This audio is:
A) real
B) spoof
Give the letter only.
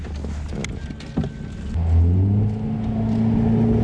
A